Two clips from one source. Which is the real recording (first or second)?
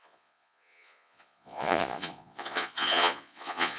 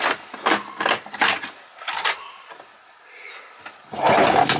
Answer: second